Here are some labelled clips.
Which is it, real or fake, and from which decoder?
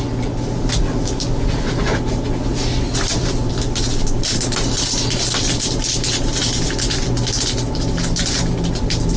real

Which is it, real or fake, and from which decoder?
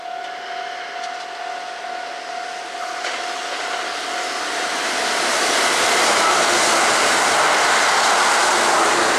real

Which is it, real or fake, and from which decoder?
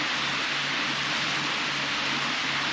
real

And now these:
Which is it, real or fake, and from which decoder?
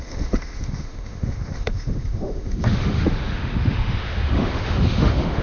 fake, autoencoder, DAC-VAE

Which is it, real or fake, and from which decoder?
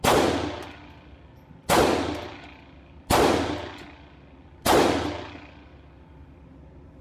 real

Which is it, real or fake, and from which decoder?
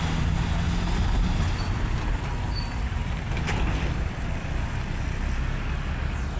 real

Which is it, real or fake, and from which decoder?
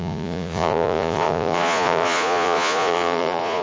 fake, vocoder, Vocos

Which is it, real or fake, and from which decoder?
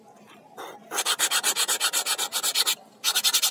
real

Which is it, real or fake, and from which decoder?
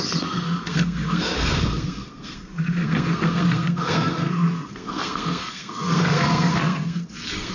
fake, codec, SNAC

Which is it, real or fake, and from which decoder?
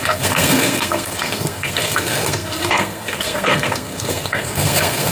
fake, codec, SNAC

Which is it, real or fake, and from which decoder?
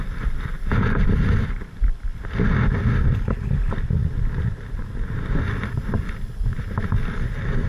real